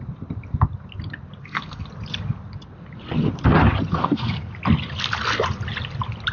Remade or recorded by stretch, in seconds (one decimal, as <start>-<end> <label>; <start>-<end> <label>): 0.0-1.4 recorded; 1.4-1.9 remade; 1.9-4.0 recorded; 4.0-4.5 remade; 4.5-6.3 recorded